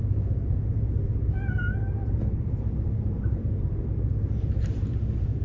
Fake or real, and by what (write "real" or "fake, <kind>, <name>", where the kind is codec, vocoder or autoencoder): fake, vocoder, BigVGAN v2